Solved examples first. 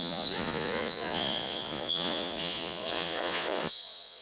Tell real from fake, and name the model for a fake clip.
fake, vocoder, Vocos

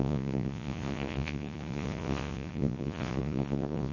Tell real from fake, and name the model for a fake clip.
fake, vocoder, Vocos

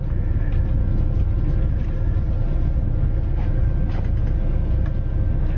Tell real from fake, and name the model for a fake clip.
real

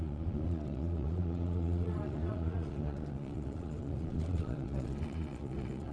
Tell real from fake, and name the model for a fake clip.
fake, vocoder, Vocos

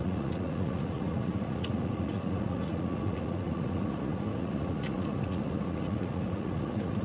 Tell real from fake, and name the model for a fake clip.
fake, vocoder, Vocos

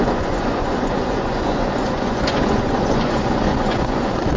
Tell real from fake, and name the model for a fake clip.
fake, vocoder, Vocos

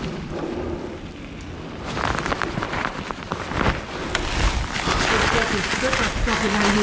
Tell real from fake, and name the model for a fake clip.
real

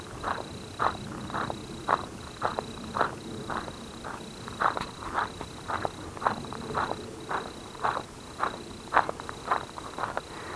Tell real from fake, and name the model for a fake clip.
real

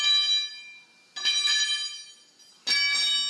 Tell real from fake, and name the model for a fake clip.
real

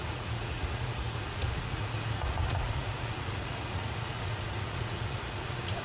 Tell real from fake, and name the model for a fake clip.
fake, vocoder, Vocos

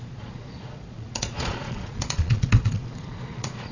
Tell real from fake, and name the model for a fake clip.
fake, vocoder, Vocos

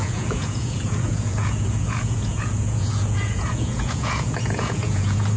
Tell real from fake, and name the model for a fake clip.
fake, vocoder, Vocos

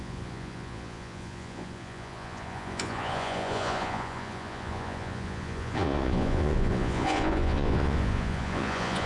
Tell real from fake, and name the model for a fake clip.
fake, vocoder, Vocos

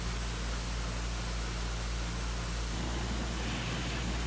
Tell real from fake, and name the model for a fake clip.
real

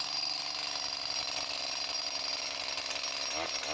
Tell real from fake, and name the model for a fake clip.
real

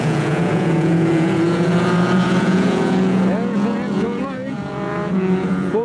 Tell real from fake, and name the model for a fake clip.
fake, vocoder, Vocos